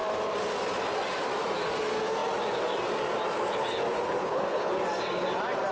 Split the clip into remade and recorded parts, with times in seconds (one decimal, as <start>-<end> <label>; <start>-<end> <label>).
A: 0.0-4.2 recorded; 4.2-4.7 remade; 4.7-5.7 recorded